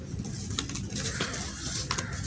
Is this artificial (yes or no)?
no